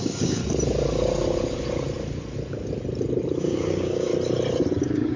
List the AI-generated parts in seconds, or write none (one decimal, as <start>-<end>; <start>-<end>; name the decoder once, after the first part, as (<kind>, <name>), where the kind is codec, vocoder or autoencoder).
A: 0.0-0.4 (codec, DAC); 3.4-4.1; 4.8-5.2